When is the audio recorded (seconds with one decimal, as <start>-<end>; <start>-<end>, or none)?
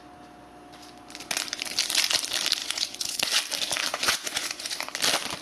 0.0-2.6; 3.3-3.9; 4.9-5.4